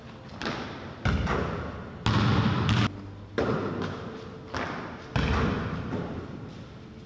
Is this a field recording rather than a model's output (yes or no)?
yes